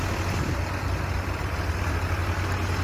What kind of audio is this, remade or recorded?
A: recorded